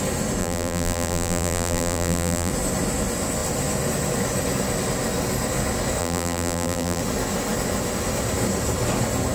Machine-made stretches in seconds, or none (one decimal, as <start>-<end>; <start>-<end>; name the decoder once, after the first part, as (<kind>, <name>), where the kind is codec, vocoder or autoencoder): 0.4-2.5 (vocoder, BigVGAN v2); 6.0-7.0